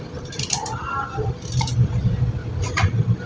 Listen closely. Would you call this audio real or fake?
real